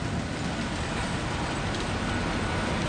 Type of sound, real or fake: real